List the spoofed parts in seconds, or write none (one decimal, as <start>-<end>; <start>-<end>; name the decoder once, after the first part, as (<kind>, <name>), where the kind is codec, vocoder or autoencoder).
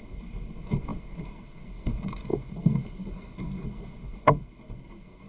0.0-5.3 (codec, SNAC)